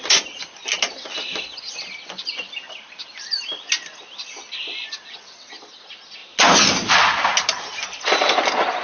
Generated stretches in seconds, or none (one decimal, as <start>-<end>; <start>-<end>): none

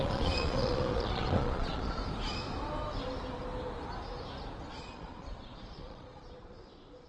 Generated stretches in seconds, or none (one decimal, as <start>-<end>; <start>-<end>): 0.0-2.0; 4.7-7.1

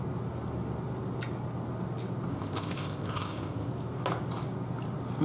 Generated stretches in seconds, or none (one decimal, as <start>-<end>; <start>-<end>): 2.3-3.7

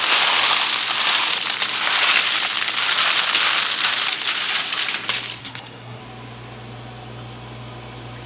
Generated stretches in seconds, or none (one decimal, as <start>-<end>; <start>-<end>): 5.4-6.0

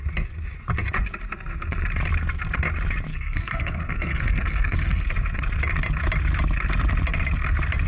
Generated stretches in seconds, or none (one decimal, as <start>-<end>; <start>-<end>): 3.1-5.1

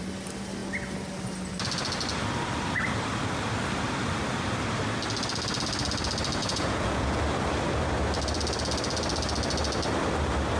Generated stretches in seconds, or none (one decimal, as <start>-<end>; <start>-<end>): 6.4-7.2